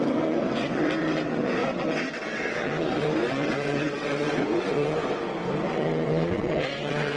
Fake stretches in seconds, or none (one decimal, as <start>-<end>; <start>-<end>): 0.0-5.0; 5.7-7.2